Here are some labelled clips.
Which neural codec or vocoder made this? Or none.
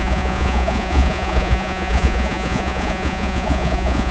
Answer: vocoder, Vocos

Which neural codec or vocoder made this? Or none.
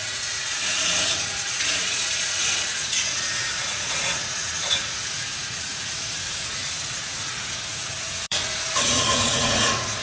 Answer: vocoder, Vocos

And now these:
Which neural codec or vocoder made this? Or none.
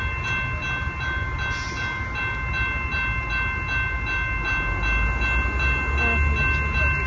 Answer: none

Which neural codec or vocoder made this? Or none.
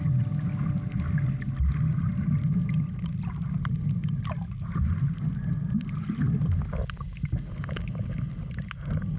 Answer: none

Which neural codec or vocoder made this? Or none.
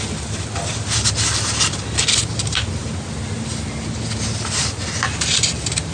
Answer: none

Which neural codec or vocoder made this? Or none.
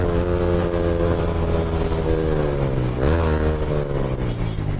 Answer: none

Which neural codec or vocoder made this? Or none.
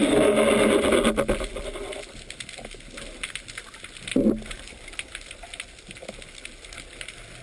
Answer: none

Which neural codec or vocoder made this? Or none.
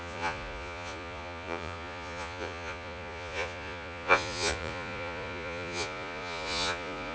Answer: vocoder, Vocos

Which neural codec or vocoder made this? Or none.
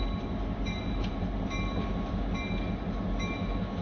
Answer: none